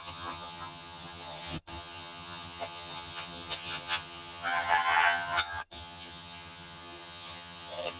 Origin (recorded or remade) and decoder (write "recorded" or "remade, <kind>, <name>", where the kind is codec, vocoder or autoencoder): remade, vocoder, HiFi-GAN